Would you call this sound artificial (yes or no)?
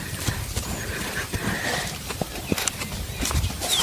no